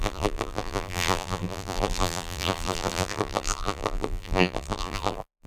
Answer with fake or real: fake